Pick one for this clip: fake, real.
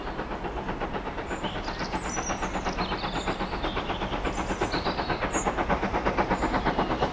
real